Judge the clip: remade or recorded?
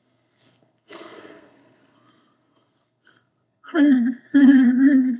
remade